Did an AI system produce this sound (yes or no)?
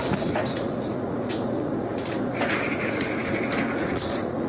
yes